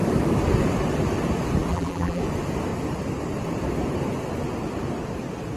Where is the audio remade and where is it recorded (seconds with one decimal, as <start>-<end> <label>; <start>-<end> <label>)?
0.0-1.7 recorded; 1.7-2.2 remade; 2.2-5.6 recorded